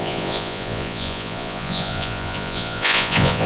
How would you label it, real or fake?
fake